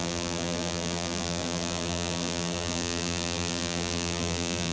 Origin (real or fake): fake